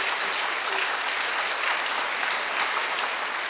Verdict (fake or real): real